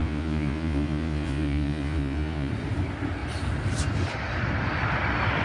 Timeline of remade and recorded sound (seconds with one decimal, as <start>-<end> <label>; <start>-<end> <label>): 0.0-2.5 remade; 2.5-5.4 recorded